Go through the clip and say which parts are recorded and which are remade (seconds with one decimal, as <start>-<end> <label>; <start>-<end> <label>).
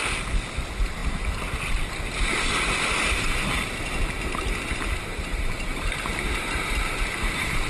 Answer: 0.0-5.1 recorded; 5.1-7.7 remade